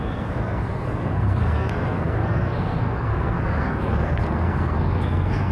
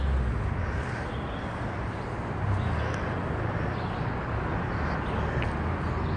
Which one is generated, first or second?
first